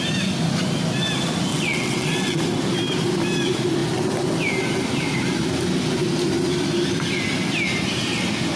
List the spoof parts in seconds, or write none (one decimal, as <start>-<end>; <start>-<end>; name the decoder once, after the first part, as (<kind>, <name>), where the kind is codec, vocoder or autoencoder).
1.5-2.4 (vocoder, WaveNeXt)